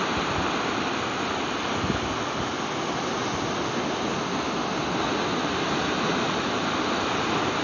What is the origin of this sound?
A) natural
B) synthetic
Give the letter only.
A